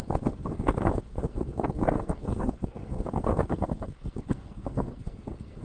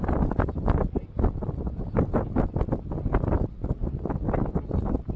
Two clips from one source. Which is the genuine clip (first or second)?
second